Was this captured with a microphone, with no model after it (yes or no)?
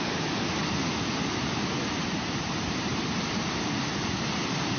no